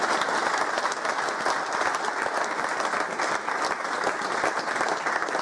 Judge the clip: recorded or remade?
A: recorded